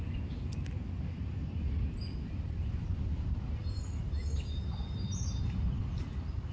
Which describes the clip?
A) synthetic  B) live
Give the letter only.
B